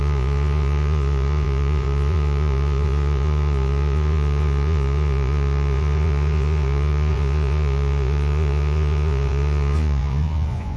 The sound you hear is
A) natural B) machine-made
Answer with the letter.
B